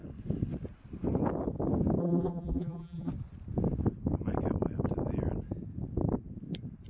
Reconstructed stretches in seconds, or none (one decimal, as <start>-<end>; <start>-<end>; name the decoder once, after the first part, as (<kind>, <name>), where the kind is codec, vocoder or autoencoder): 2.0-3.1 (vocoder, BigVGAN v2)